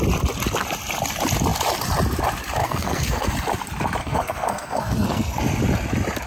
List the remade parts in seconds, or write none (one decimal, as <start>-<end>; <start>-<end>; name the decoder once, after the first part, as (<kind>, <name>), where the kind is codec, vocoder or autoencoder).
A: 2.6-3.3 (codec, SNAC); 4.0-5.4

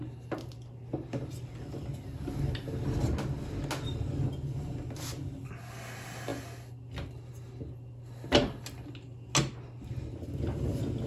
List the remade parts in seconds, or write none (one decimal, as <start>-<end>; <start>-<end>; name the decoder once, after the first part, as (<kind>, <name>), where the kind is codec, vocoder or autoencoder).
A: none

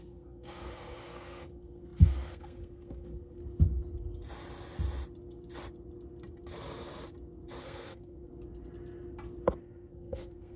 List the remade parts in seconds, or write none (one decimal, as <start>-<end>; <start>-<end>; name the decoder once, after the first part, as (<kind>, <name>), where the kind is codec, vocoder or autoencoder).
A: 0.0-3.4 (codec, SNAC); 7.6-8.3; 9.6-10.6

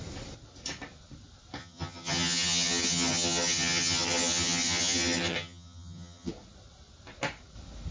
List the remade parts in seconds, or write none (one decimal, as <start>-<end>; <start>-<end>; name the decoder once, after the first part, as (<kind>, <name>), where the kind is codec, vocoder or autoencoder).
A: 1.6-6.3 (vocoder, HiFi-GAN)

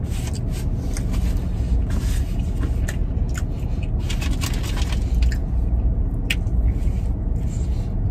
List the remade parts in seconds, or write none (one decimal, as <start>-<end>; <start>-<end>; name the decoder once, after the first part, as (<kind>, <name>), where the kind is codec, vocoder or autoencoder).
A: none

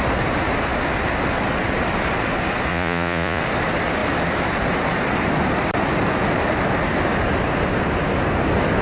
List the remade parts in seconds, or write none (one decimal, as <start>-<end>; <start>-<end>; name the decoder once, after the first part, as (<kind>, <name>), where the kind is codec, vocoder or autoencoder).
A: 2.7-3.4 (vocoder, Vocos)

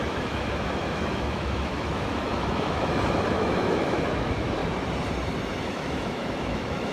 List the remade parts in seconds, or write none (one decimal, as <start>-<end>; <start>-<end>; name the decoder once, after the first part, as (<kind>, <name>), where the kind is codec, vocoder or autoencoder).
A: 0.0-4.6 (autoencoder, DAC-VAE); 5.7-6.9